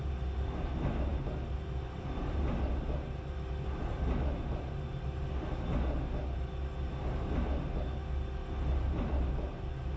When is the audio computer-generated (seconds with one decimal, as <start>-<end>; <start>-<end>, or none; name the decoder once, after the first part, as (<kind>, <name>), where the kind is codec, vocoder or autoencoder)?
none